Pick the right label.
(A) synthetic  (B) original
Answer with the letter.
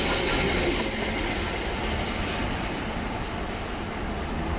B